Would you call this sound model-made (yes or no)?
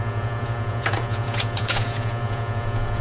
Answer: yes